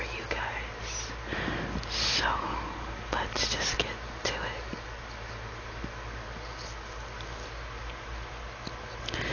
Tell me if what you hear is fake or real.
real